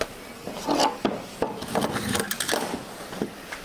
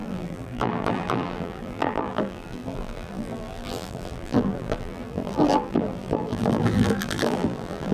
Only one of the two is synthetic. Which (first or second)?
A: second